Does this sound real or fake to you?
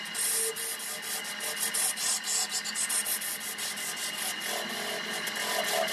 real